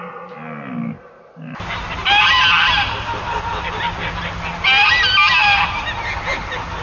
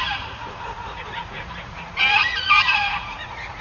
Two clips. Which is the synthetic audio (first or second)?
second